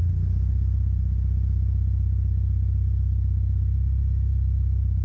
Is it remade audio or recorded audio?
recorded